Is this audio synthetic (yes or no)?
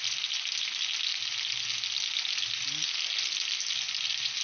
no